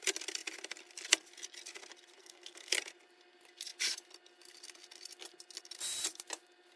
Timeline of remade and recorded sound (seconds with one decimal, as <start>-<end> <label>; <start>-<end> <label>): 0.0-2.2 recorded; 2.2-2.7 remade; 2.7-6.8 recorded